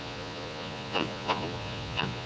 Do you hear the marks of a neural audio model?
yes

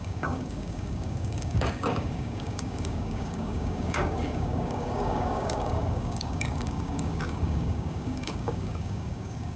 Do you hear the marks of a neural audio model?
yes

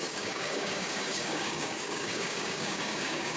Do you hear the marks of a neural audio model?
yes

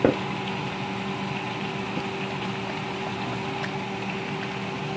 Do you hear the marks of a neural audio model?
no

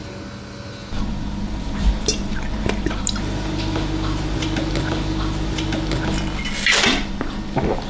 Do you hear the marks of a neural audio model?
no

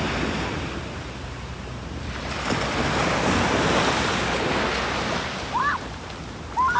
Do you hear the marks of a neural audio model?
no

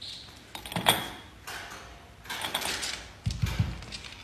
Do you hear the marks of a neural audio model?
no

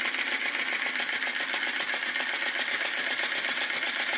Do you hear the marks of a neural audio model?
yes